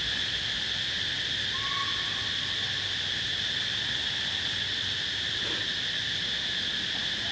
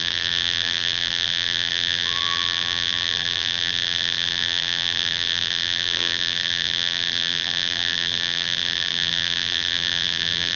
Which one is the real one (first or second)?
first